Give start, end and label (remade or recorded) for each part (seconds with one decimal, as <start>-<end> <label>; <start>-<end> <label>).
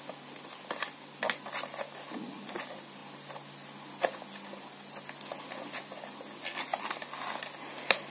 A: 0.0-8.1 recorded